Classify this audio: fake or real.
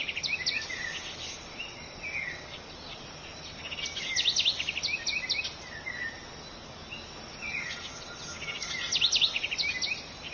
real